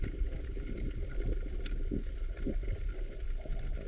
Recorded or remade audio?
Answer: recorded